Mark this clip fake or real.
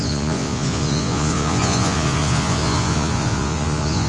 fake